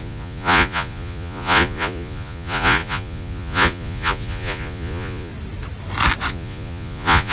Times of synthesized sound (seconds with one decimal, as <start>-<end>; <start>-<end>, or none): 0.0-5.3; 6.3-7.3